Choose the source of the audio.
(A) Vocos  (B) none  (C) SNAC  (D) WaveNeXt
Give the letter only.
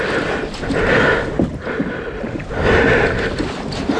B